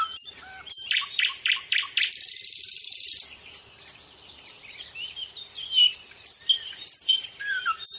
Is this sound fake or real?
fake